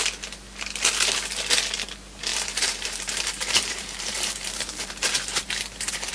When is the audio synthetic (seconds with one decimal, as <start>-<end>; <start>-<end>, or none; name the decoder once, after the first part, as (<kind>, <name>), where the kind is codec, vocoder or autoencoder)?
2.3-6.1 (vocoder, BigVGAN v2)